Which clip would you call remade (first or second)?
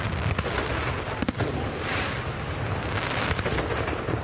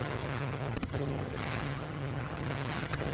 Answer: second